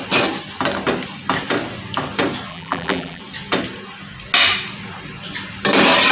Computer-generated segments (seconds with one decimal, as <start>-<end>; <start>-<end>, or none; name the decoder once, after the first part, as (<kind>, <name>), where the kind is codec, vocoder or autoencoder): 2.5-3.2 (vocoder, BigVGAN v2)